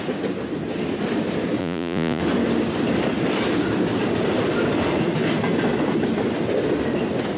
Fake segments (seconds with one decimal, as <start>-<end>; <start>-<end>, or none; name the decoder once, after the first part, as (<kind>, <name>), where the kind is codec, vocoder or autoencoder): 1.6-2.2 (vocoder, Vocos)